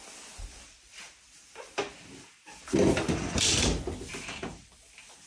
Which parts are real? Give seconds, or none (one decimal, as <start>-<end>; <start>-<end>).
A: 0.0-5.3